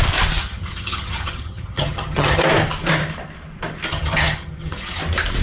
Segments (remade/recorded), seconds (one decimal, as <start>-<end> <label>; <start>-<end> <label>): 0.0-0.4 recorded; 0.4-2.4 remade; 2.4-3.9 recorded; 3.9-5.0 remade; 5.0-5.4 recorded